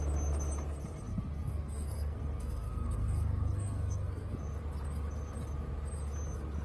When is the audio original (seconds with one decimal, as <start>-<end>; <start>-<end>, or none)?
0.0-1.1; 4.4-6.6